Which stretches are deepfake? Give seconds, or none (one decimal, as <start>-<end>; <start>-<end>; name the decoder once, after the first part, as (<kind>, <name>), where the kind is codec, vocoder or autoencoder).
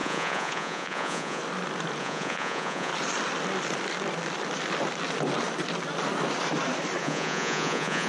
0.0-1.4 (vocoder, Vocos); 2.0-2.9; 7.0-8.1